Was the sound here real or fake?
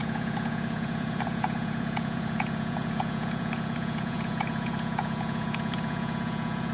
fake